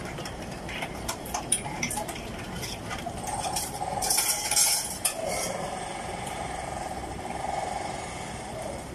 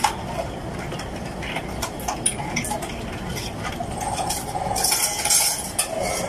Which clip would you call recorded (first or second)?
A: second